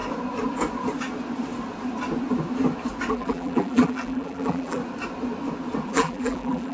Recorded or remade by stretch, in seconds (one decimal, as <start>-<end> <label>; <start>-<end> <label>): 0.0-3.1 recorded; 3.1-4.8 remade; 4.8-5.9 recorded; 5.9-6.7 remade